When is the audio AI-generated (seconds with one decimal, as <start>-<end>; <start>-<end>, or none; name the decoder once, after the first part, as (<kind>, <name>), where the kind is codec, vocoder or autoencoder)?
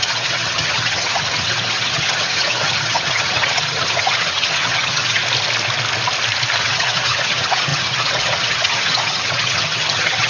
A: 0.0-5.2 (vocoder, HiFi-GAN); 6.6-10.3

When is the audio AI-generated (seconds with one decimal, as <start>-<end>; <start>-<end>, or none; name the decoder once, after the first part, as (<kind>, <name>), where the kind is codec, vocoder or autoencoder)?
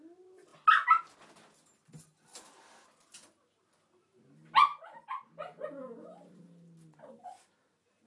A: none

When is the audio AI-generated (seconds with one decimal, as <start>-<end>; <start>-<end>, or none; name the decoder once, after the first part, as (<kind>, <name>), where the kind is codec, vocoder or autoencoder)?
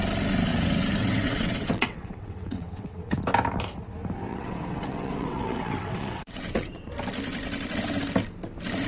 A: 0.5-3.2 (vocoder, WaveNeXt); 4.3-6.9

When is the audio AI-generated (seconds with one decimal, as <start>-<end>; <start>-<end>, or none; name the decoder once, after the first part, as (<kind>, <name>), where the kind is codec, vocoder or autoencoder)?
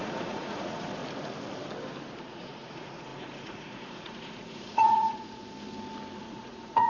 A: 0.0-1.0 (vocoder, Vocos); 2.2-5.4; 6.2-6.9